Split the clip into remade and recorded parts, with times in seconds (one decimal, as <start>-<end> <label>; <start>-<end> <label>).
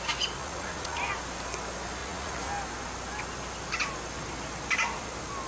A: 0.0-0.4 recorded; 0.4-1.1 remade; 1.1-2.0 recorded; 2.0-2.5 remade; 2.5-5.5 recorded